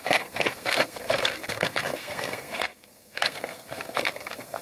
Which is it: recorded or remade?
remade